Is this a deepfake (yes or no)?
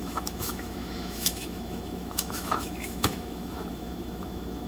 yes